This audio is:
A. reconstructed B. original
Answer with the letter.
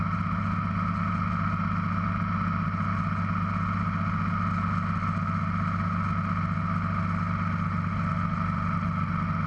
B